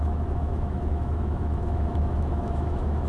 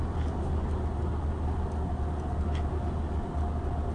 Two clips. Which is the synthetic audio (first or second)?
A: first